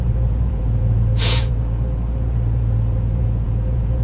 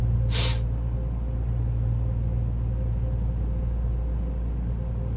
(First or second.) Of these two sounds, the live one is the second